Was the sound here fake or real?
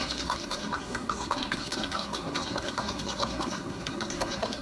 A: fake